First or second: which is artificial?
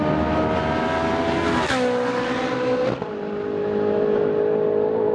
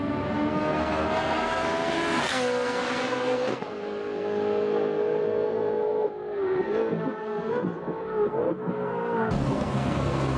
second